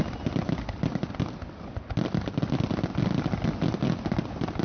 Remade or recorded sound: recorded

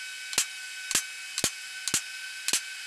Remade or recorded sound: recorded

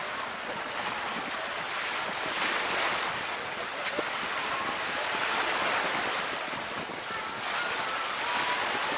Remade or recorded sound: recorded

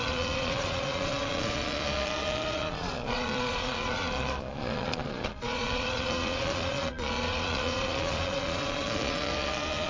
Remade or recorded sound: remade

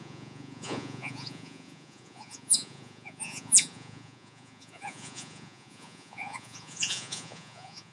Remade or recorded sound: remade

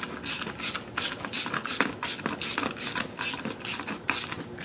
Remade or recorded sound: recorded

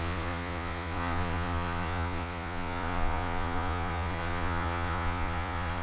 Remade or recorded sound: remade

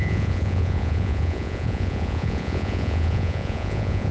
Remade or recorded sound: remade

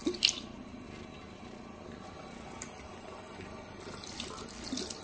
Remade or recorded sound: recorded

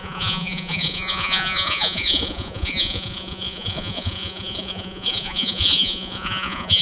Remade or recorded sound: remade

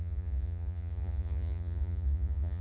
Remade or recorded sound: remade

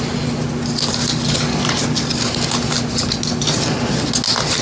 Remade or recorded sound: recorded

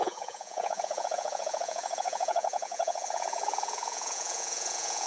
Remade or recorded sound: remade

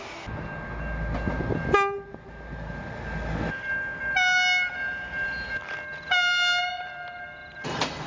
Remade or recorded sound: recorded